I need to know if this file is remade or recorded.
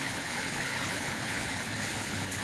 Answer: remade